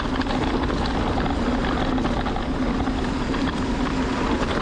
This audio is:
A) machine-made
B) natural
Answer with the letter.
B